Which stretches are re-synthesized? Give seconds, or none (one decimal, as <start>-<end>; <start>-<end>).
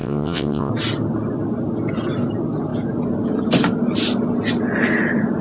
0.0-0.7